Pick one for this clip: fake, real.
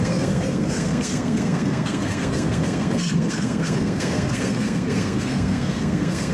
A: fake